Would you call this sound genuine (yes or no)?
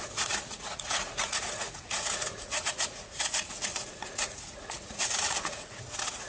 no